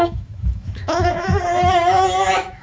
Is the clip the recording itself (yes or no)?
no